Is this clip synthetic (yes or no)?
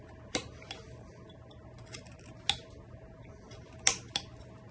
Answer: no